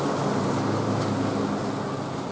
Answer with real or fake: real